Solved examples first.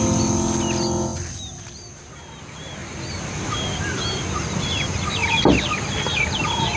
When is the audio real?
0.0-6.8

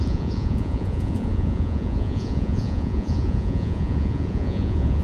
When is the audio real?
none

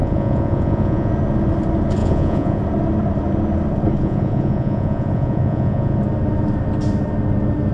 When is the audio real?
1.1-2.0; 2.6-4.0; 6.0-7.7

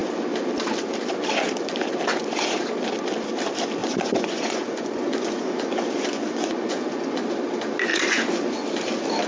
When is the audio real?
0.0-3.8; 7.2-7.9; 8.6-9.3

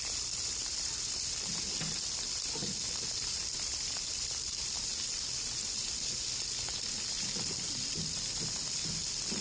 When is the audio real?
0.0-9.4

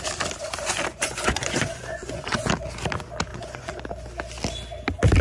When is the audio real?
0.0-0.9; 2.5-3.3; 3.8-5.2

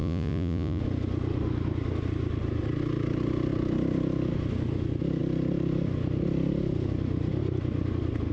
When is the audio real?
0.8-8.3

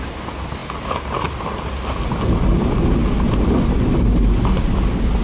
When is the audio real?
0.0-5.2